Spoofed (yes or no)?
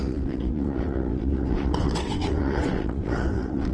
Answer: yes